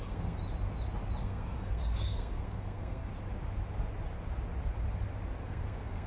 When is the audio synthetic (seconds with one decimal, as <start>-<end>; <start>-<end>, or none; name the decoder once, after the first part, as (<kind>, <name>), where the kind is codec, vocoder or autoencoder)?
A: 0.0-0.4 (codec, SNAC); 1.2-3.1; 5.4-6.1